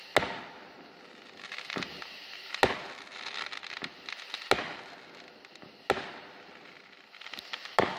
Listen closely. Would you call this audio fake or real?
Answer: real